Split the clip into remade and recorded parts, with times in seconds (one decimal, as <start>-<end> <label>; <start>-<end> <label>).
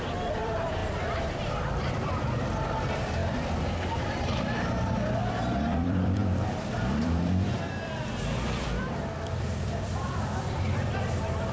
0.0-11.5 remade